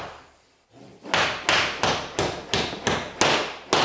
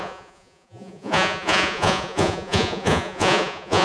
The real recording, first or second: first